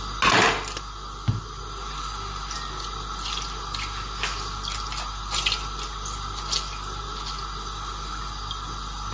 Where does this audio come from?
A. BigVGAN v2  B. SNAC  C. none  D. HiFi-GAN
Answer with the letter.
C